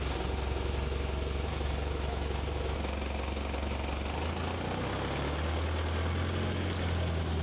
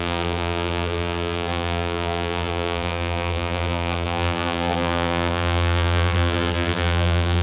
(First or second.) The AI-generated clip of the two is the second